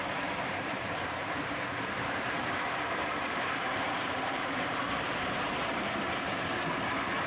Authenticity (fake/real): fake